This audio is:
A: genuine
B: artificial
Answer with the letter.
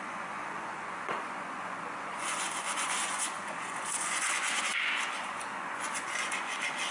B